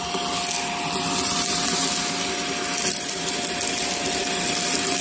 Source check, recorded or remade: recorded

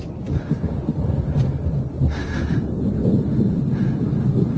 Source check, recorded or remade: recorded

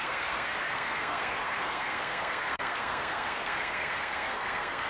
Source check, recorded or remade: remade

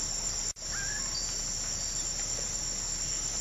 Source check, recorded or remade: recorded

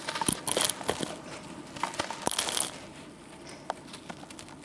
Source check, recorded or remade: recorded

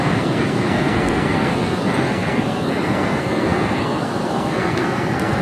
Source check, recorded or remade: remade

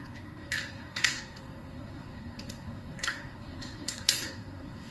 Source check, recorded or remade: remade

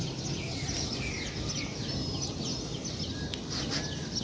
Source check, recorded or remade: recorded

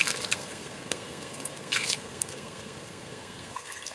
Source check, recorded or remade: remade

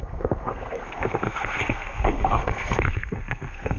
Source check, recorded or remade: remade